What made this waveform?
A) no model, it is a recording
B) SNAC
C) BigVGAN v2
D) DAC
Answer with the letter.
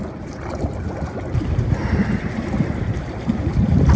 A